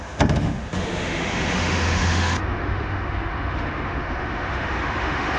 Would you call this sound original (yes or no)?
no